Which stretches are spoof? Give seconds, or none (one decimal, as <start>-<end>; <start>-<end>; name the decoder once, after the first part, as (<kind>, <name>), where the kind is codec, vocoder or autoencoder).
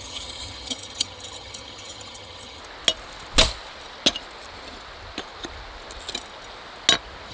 0.0-2.6 (vocoder, HiFi-GAN)